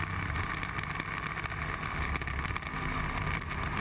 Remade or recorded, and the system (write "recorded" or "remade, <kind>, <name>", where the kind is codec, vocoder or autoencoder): recorded